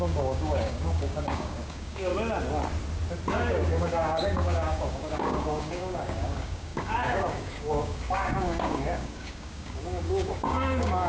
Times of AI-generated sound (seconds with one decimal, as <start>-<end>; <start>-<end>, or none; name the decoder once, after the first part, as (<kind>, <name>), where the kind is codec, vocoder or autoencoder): 0.0-2.1 (codec, DAC); 3.3-11.1